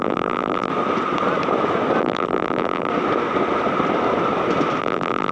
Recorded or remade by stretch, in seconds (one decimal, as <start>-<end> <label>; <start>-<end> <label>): 0.0-0.7 remade; 0.7-2.0 recorded; 2.0-2.9 remade; 2.9-4.8 recorded; 4.8-5.3 remade